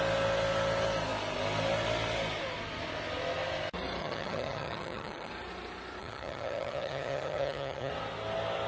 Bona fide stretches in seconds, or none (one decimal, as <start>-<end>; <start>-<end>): 0.0-4.0; 5.3-6.0; 7.9-8.7